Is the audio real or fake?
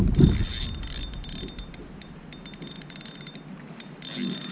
real